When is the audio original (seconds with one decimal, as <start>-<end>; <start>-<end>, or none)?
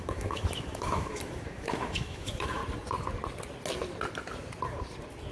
2.6-5.3